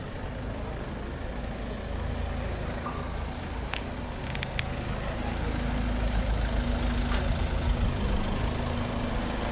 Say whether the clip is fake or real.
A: real